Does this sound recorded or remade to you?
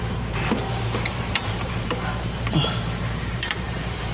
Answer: remade